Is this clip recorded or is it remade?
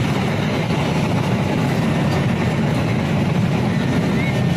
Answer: recorded